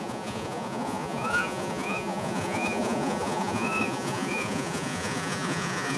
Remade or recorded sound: remade